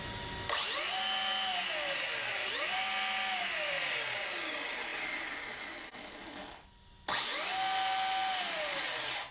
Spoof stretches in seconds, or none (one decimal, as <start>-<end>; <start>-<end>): none